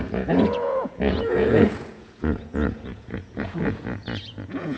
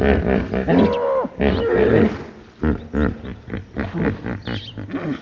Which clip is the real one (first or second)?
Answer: second